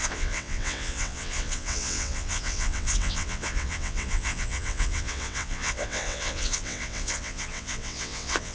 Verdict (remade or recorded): remade